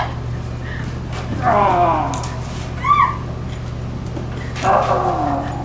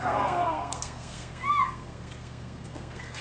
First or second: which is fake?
second